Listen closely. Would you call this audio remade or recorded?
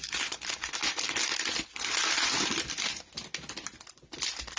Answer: recorded